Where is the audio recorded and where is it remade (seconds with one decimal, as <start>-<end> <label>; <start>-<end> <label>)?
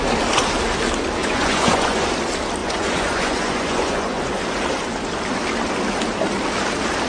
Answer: 0.0-1.2 recorded; 1.2-2.1 remade; 2.1-2.6 recorded; 2.6-4.2 remade; 4.2-7.1 recorded